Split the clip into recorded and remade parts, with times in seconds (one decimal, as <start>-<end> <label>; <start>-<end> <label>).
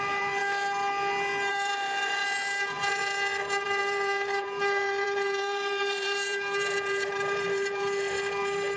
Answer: 0.0-0.4 remade; 0.4-1.5 recorded; 1.5-8.8 remade